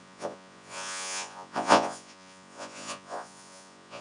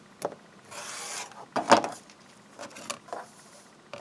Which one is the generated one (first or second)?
first